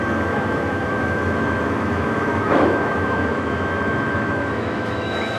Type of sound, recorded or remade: remade